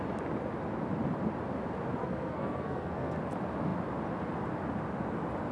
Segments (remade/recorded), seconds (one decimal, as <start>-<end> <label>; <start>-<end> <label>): 0.0-2.0 recorded; 2.0-3.2 remade; 3.2-5.5 recorded